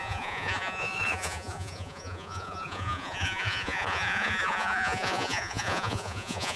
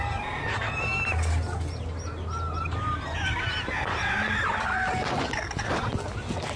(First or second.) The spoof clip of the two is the first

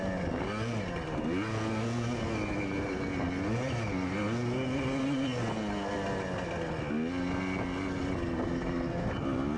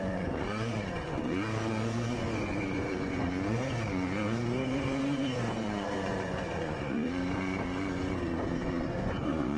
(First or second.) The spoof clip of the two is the second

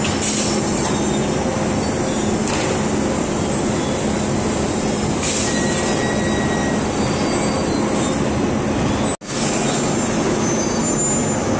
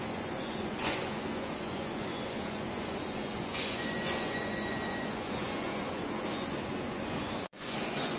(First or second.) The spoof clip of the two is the second